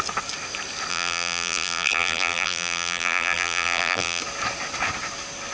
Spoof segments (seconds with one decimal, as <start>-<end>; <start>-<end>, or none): 0.9-4.2